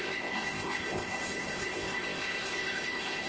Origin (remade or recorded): remade